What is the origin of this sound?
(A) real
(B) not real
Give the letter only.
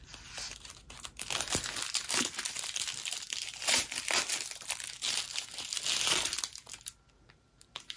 A